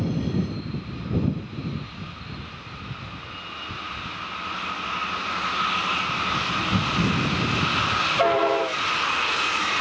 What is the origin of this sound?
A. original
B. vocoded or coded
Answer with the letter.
A